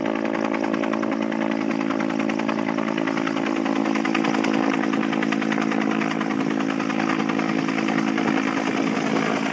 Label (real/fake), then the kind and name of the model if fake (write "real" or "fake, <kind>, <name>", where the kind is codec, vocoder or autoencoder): real